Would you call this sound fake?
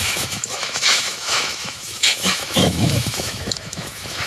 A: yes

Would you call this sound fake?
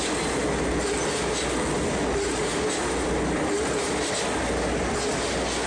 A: no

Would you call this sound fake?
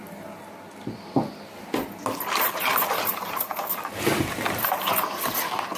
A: no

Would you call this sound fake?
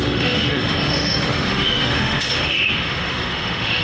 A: yes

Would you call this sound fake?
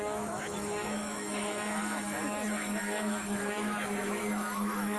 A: yes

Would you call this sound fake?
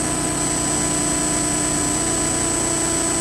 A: no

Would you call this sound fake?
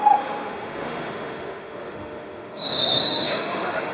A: yes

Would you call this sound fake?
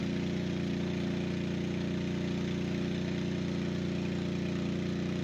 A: no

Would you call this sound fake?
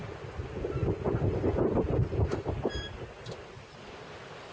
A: no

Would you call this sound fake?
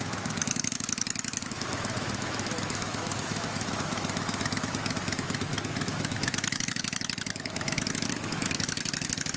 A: yes